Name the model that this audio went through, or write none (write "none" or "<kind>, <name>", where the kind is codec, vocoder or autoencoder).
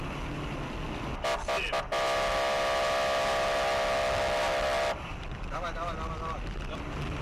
none